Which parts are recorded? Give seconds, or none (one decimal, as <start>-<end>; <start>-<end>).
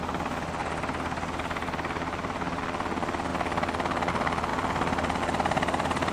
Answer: 0.0-0.6; 2.6-6.1